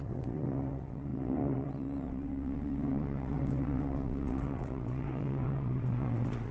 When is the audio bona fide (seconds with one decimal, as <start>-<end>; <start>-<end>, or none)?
none